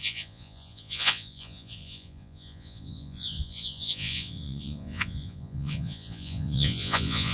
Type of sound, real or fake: fake